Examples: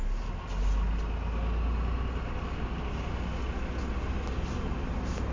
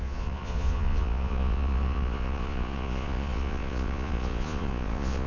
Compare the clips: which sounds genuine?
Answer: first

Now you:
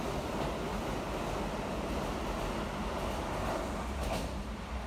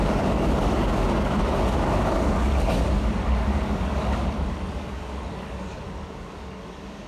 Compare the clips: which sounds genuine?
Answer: first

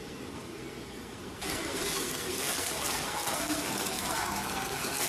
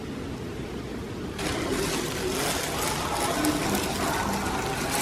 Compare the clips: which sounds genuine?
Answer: second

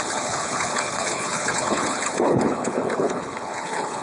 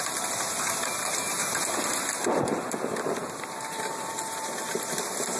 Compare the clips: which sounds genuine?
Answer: second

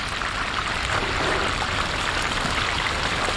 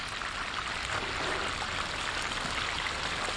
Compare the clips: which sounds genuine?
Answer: second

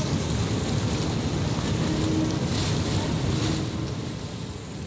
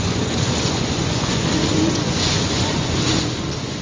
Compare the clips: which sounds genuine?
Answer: first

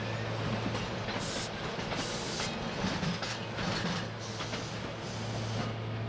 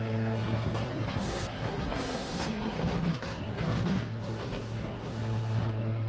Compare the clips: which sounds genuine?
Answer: first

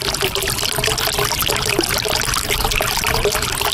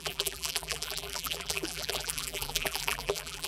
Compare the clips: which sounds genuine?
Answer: first